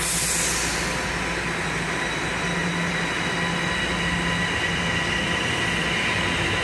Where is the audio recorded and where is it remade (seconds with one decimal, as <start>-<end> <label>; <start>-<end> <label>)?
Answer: 0.0-6.6 recorded